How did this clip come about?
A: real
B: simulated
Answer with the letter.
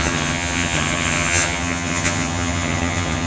B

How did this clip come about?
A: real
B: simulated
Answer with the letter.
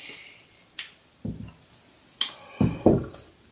A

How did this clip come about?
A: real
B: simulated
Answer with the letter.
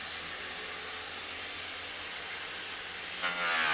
A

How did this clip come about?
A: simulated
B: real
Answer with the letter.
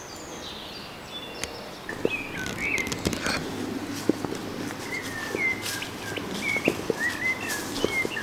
B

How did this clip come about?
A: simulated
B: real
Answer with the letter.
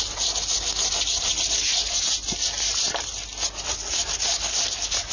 B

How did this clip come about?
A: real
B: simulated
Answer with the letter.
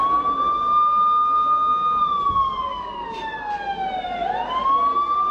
A